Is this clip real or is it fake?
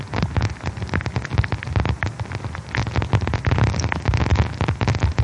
real